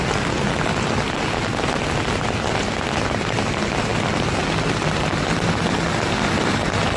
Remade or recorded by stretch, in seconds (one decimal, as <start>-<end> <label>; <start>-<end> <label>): 0.0-7.0 recorded